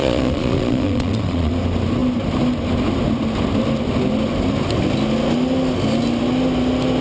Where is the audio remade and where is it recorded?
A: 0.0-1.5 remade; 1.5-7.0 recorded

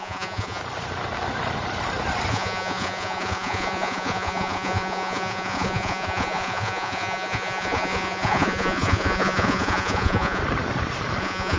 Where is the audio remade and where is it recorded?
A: 0.0-0.6 remade; 0.6-2.3 recorded; 2.3-10.4 remade; 10.4-11.2 recorded; 11.2-11.6 remade

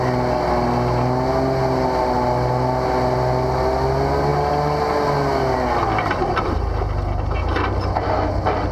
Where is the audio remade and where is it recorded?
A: 0.0-8.7 recorded

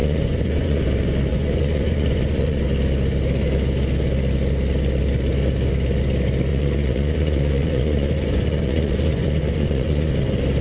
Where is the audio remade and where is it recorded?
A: 0.0-0.9 remade; 0.9-1.3 recorded; 1.3-2.6 remade; 2.6-6.5 recorded; 6.5-10.1 remade; 10.1-10.6 recorded